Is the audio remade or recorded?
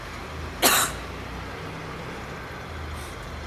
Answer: recorded